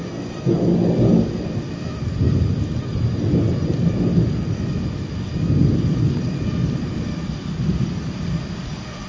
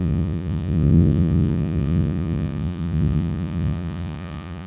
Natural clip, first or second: first